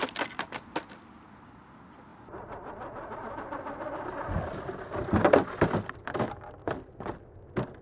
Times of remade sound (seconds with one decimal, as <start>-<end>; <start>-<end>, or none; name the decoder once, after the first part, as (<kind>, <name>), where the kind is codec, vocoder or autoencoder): none